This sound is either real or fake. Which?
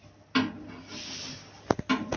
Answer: real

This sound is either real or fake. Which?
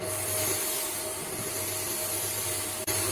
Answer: real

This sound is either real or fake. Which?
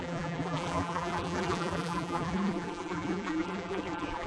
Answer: fake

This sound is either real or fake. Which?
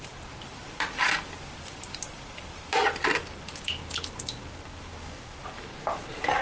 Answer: real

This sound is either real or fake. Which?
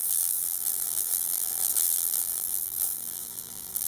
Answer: fake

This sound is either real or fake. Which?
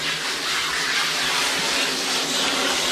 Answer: real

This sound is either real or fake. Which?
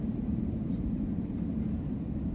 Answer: fake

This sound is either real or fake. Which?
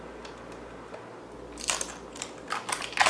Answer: real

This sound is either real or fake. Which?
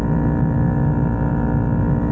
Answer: real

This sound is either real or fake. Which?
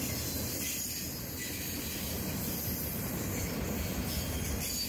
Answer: real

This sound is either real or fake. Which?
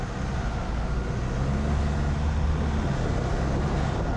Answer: real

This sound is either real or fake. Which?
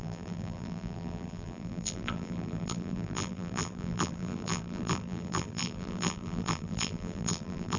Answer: fake